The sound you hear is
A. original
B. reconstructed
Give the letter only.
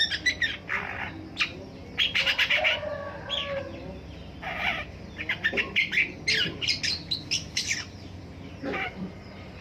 A